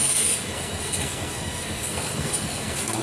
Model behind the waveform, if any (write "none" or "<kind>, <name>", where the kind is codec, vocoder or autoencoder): codec, SNAC